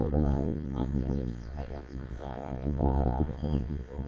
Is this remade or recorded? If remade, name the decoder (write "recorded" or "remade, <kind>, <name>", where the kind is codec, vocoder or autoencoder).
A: remade, vocoder, Vocos